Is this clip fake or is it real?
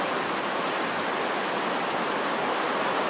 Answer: real